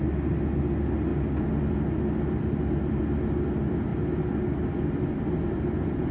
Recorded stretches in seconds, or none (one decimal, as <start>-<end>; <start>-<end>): 0.0-6.1